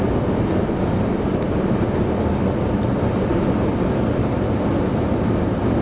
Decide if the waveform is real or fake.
real